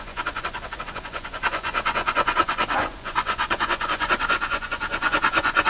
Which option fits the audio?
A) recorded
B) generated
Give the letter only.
B